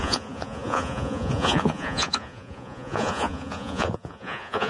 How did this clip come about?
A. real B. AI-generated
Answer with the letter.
B